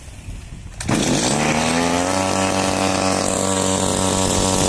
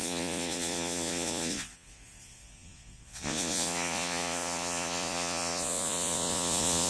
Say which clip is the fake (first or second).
second